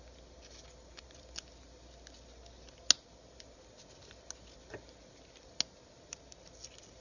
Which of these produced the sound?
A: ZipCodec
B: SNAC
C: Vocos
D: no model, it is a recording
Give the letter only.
D